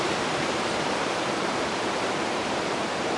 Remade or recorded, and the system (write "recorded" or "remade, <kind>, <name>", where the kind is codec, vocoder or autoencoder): remade, vocoder, BigVGAN v2